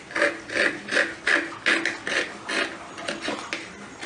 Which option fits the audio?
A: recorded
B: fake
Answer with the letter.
A